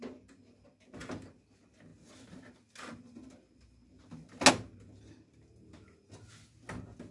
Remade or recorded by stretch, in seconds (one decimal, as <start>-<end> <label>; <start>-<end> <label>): 0.0-7.1 recorded